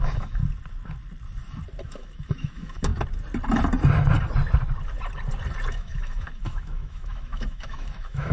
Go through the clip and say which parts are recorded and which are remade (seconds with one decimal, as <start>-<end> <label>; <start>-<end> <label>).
0.0-0.4 remade; 0.4-1.8 recorded; 1.8-2.9 remade; 2.9-5.7 recorded; 5.7-8.3 remade